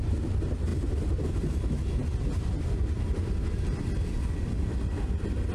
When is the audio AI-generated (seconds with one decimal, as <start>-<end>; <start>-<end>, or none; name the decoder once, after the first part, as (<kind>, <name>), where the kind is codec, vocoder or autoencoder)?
none